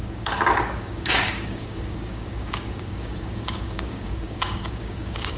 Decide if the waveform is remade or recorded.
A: remade